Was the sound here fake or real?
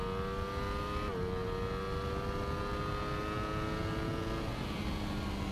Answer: real